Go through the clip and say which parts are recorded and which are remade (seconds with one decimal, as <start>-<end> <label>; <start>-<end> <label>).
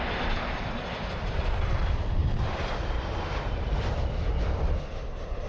0.0-2.2 recorded; 2.2-4.5 remade; 4.5-5.5 recorded